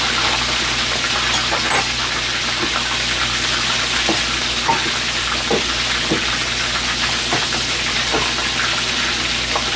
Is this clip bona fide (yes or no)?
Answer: yes